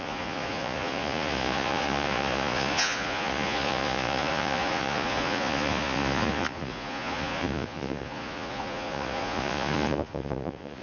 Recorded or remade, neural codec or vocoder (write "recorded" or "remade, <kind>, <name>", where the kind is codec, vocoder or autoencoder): remade, vocoder, Vocos